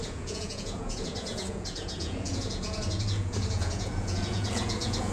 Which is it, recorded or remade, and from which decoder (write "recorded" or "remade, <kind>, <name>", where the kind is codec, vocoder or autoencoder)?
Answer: remade, vocoder, Vocos